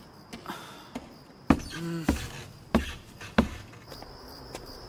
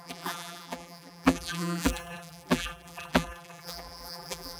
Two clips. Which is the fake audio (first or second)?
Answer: second